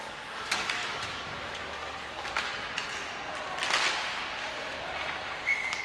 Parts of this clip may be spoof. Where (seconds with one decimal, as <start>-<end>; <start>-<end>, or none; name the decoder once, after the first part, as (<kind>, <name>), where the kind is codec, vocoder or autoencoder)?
0.0-2.5 (codec, DAC)